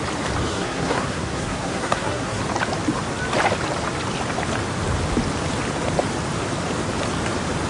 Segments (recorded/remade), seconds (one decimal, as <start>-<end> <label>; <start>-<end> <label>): 0.0-0.5 recorded; 0.5-2.4 remade; 2.4-7.7 recorded